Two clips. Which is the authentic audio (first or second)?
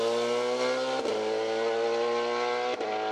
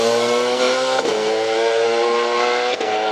first